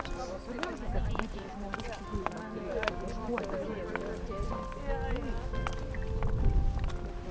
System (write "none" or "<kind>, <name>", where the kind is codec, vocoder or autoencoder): none